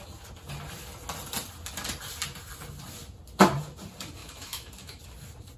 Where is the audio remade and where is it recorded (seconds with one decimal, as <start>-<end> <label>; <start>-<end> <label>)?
0.0-4.2 recorded; 4.2-5.0 remade; 5.0-5.6 recorded